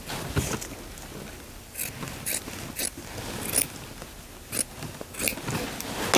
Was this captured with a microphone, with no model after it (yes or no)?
yes